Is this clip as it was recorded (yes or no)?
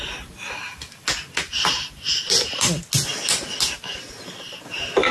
yes